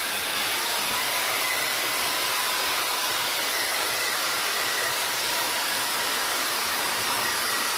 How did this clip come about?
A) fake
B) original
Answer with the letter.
A